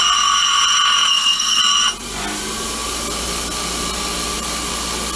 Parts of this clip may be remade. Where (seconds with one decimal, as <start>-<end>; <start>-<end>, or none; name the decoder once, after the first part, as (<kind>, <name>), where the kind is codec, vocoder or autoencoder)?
1.1-1.6 (codec, SNAC)